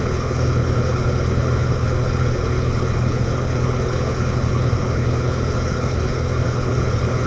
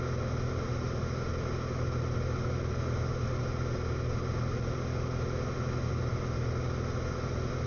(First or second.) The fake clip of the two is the first